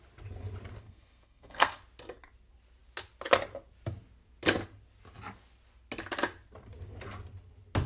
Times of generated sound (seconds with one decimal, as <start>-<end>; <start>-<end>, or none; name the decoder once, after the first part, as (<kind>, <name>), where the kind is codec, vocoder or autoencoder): 0.8-1.8 (codec, SNAC)